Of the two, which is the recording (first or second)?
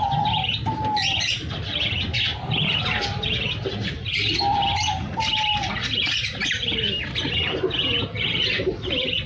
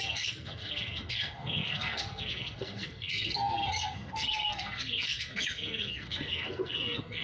first